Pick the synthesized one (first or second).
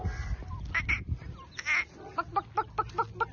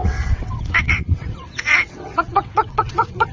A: second